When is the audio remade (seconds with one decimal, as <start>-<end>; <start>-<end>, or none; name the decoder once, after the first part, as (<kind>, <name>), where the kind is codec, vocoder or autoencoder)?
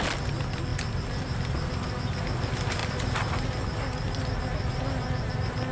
none